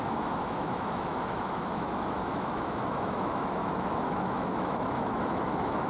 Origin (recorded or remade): remade